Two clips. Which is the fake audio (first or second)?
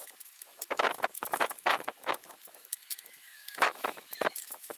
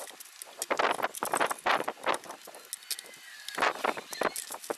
first